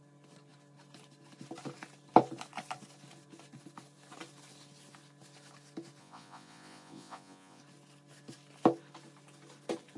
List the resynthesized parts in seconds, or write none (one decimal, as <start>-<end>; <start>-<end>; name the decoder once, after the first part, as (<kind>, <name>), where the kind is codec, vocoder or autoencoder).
6.0-7.6 (vocoder, Vocos)